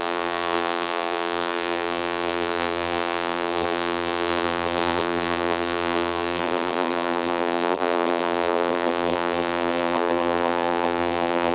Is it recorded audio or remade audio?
remade